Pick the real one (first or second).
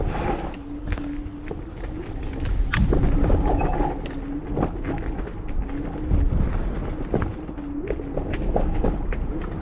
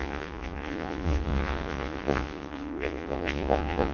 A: first